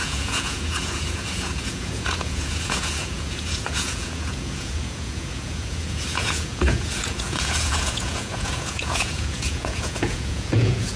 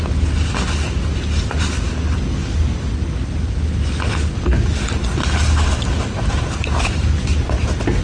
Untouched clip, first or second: second